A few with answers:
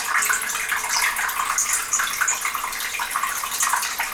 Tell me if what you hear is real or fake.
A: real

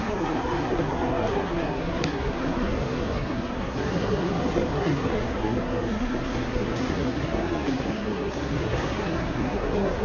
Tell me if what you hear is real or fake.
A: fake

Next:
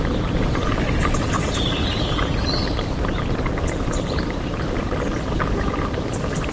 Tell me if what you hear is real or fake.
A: real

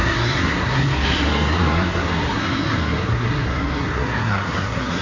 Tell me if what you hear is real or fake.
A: fake